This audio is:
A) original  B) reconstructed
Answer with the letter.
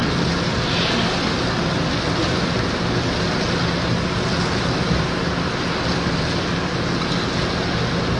A